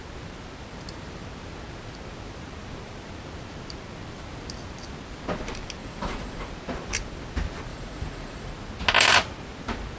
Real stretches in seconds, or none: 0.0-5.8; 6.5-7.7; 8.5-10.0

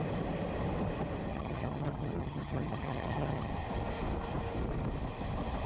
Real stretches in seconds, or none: 0.0-1.3; 3.5-5.7

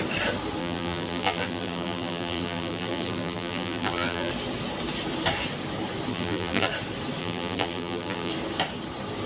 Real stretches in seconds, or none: 0.0-0.6; 4.3-6.1; 6.7-7.2; 8.3-9.3

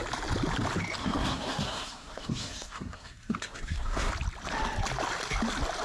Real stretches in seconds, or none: 0.0-1.0; 4.1-5.8